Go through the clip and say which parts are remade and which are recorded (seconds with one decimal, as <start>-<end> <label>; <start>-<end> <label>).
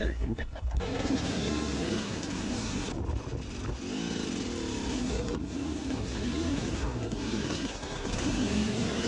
0.0-2.9 remade; 2.9-4.9 recorded; 4.9-9.1 remade